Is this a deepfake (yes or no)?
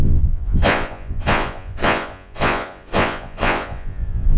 yes